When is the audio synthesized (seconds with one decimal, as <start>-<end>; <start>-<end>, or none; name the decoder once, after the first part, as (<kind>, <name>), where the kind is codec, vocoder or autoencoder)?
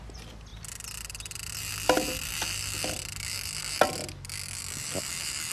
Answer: none